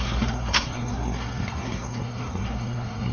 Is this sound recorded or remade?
remade